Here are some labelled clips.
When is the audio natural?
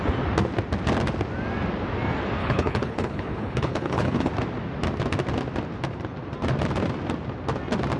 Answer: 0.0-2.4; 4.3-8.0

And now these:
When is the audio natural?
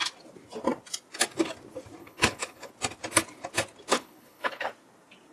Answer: 0.0-2.0; 2.7-3.9; 4.7-5.3